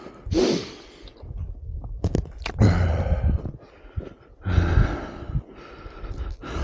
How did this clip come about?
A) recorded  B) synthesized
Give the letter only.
A